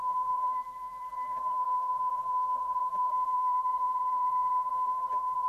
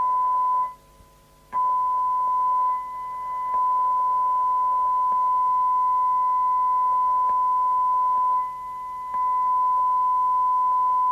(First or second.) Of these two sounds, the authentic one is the second